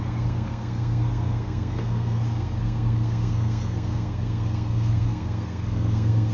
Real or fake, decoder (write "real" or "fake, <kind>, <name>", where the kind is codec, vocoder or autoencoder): fake, codec, SNAC